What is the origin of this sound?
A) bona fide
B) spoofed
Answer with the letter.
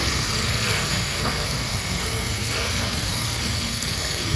B